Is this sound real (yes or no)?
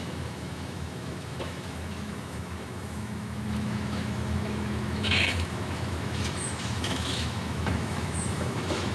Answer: no